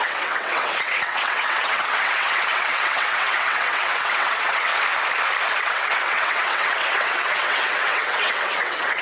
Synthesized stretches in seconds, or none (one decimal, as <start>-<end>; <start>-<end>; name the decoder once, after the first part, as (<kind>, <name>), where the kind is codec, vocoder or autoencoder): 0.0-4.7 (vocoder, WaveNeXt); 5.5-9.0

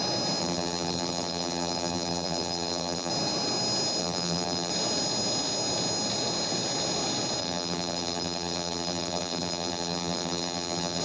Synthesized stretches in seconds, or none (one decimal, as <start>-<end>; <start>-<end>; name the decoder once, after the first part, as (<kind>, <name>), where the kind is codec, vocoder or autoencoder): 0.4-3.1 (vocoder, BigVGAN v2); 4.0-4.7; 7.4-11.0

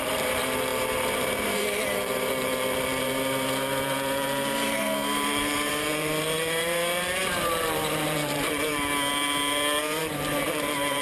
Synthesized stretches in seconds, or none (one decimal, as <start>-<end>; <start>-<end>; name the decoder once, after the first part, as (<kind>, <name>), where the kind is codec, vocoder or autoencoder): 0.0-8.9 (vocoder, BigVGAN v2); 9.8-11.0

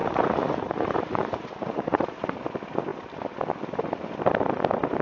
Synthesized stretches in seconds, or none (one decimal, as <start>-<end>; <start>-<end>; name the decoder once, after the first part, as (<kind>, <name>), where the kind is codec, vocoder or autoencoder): 0.0-2.4 (vocoder, Vocos)

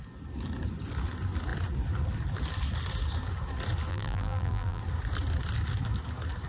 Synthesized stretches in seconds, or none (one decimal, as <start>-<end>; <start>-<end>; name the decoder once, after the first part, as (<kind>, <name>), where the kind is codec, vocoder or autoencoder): 3.9-4.8 (vocoder, BigVGAN v2)